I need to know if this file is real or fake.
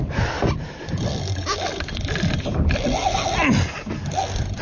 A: real